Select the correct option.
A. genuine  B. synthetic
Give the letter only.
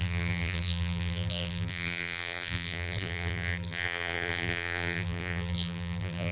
B